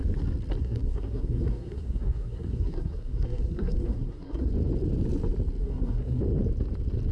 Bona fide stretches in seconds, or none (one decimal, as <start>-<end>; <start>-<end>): 0.0-0.6; 4.5-5.6; 6.2-7.1